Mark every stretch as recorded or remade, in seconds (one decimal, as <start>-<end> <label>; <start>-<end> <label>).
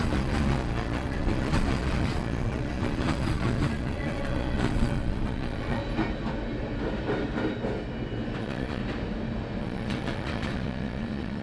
0.0-5.8 remade; 5.8-8.4 recorded; 8.4-8.8 remade; 8.8-9.6 recorded; 9.6-11.4 remade